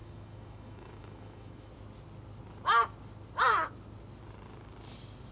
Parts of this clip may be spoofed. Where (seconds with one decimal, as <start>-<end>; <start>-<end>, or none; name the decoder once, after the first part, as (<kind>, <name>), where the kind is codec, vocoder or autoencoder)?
0.0-1.7 (autoencoder, DAC-VAE)